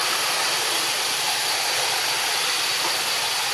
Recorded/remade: recorded